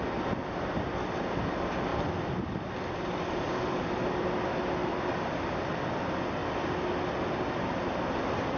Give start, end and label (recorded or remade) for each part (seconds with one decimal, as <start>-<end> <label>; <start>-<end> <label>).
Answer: 0.0-8.6 recorded